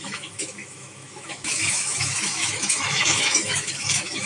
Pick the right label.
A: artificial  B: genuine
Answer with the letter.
A